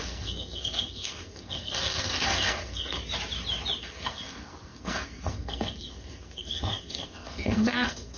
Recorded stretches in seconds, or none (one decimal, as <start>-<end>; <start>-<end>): 3.0-3.8